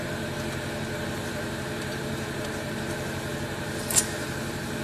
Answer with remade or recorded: remade